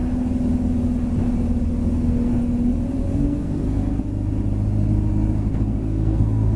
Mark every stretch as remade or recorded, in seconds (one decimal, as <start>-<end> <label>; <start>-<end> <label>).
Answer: 0.0-1.8 recorded; 1.8-2.4 remade; 2.4-3.0 recorded; 3.0-4.0 remade; 4.0-5.1 recorded; 5.1-6.6 remade